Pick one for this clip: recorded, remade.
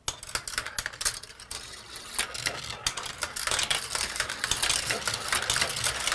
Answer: recorded